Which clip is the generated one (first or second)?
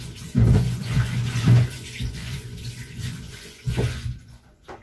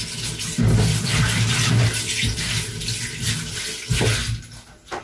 first